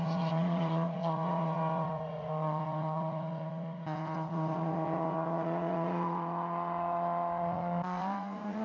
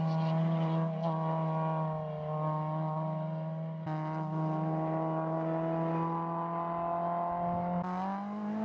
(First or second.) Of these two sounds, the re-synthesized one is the first